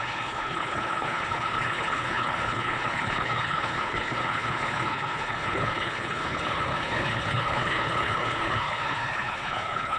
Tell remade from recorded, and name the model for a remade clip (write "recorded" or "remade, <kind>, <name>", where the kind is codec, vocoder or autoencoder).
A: remade, codec, HILCodec